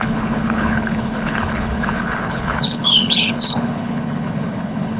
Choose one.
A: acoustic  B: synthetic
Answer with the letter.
B